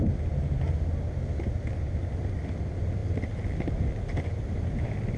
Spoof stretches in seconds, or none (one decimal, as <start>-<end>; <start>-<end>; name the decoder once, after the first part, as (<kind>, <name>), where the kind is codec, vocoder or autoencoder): none